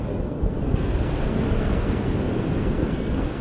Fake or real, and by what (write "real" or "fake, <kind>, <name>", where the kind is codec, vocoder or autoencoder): fake, codec, SNAC